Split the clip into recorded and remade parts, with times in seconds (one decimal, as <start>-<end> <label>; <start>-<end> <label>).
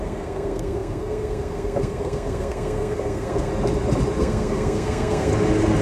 0.0-3.5 remade; 3.5-4.2 recorded; 4.2-5.3 remade; 5.3-5.8 recorded